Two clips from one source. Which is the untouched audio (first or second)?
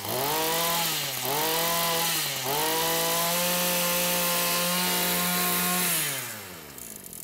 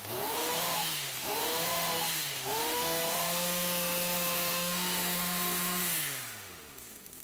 first